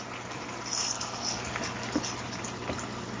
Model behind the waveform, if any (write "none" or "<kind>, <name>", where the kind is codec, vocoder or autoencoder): none